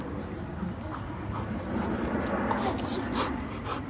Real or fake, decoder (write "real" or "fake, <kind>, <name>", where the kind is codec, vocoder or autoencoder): real